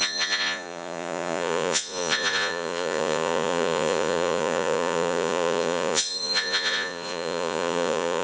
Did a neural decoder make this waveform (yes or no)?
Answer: yes